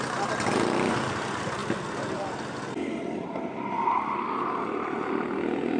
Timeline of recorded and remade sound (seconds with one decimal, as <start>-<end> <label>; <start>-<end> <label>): 0.0-5.8 recorded